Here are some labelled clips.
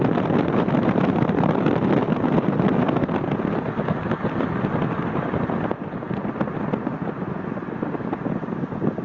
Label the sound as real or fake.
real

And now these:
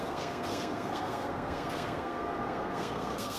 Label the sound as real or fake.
fake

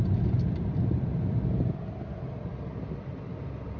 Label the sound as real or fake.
real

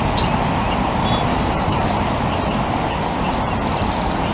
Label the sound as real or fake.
real